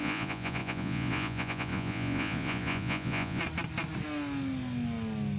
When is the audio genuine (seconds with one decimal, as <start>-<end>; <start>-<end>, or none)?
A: 3.4-5.4